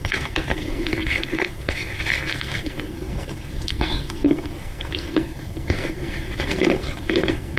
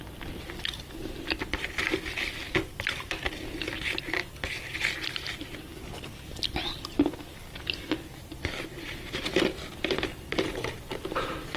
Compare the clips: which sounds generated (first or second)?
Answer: first